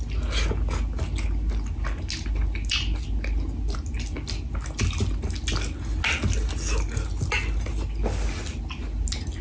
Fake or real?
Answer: real